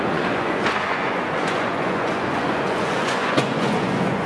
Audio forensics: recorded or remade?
remade